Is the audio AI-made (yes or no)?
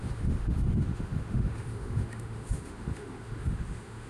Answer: yes